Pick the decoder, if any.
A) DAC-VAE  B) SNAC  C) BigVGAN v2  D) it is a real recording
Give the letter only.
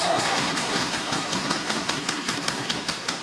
B